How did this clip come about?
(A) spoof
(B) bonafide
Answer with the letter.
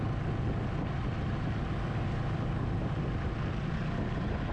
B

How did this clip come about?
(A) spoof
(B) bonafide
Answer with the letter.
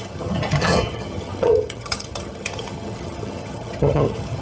A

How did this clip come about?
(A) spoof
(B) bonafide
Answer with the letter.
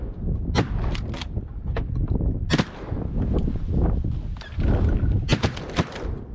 B